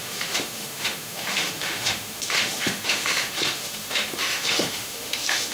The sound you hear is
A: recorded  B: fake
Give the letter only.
B